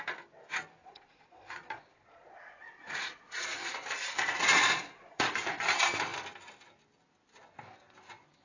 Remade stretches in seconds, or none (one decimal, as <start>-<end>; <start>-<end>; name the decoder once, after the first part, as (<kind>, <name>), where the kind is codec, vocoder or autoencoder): 0.8-5.3 (vocoder, Vocos)